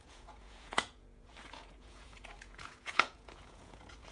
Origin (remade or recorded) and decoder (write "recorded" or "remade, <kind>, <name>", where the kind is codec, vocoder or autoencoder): remade, vocoder, Vocos